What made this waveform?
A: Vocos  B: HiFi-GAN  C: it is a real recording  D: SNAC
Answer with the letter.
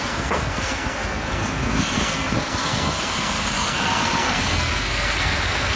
D